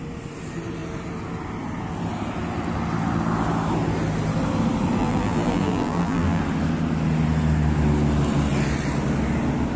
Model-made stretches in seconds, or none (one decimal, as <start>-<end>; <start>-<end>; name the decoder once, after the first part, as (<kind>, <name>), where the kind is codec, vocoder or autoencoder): 5.0-6.4 (vocoder, BigVGAN v2)